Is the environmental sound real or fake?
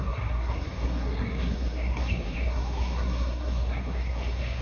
fake